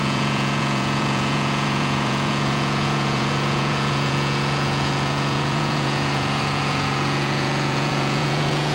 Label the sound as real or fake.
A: fake